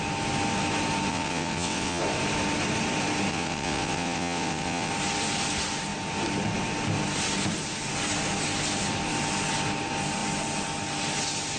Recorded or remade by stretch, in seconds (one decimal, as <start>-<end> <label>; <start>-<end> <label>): 0.0-1.1 recorded; 1.1-2.0 remade; 2.0-3.3 recorded; 3.3-4.9 remade; 4.9-11.6 recorded